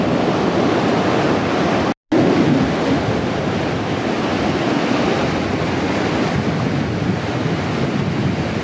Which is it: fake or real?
real